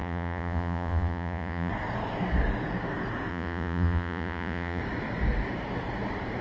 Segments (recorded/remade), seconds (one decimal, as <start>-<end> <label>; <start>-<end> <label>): 0.0-1.7 remade; 1.7-3.3 recorded; 3.3-4.8 remade; 4.8-6.4 recorded